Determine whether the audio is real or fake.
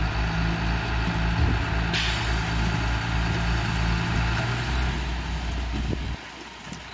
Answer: real